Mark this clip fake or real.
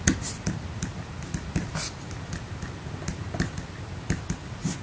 real